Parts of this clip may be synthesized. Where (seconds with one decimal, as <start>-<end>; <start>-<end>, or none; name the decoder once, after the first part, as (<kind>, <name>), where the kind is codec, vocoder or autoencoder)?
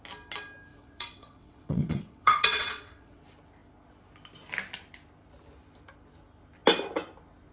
0.7-3.2 (vocoder, WaveNeXt)